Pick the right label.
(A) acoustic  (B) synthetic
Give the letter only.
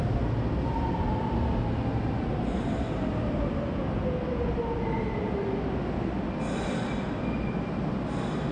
A